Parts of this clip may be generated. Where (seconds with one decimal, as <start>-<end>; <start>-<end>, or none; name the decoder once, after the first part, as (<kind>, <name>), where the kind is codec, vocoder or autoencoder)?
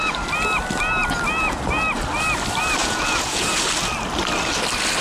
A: 2.8-3.6 (vocoder, Vocos)